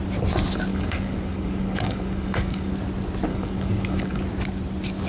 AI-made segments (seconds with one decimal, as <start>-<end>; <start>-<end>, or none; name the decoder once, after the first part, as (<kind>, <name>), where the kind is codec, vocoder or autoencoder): 0.7-2.7 (codec, DAC); 3.3-4.2